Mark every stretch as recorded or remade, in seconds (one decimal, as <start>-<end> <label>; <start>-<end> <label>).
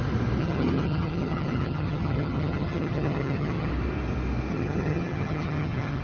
0.0-0.4 recorded; 0.4-3.7 remade; 3.7-4.5 recorded; 4.5-6.0 remade